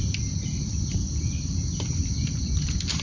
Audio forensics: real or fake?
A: fake